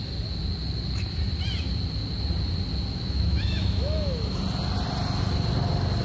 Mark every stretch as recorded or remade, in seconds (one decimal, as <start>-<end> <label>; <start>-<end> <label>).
0.0-2.9 recorded; 2.9-4.4 remade; 4.4-6.0 recorded